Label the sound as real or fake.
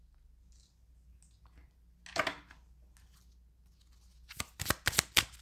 real